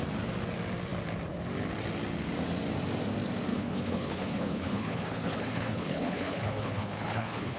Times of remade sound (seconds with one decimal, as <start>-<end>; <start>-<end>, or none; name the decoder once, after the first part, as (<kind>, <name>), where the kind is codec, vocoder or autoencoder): 3.5-7.6 (codec, HILCodec)